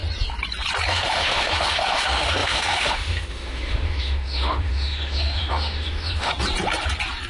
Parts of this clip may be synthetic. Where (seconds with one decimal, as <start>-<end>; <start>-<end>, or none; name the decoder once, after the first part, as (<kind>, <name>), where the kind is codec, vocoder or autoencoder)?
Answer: 0.9-6.3 (autoencoder, DAC-VAE)